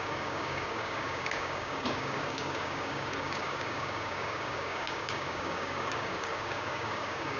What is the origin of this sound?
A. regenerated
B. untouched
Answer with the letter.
A